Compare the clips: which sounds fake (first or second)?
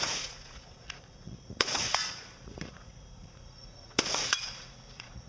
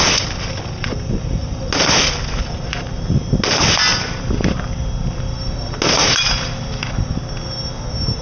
first